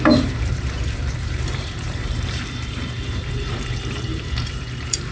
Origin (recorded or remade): remade